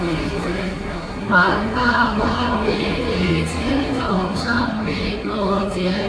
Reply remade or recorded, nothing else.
remade